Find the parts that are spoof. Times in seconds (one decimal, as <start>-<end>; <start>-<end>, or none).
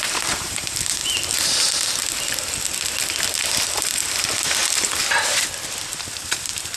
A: 0.0-1.0; 3.2-6.8